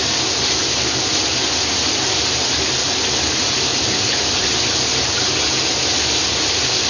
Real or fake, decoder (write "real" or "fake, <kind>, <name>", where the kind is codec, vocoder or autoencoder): real